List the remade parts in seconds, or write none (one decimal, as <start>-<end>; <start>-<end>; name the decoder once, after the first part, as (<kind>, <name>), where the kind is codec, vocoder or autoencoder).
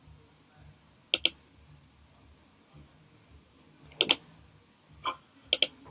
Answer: none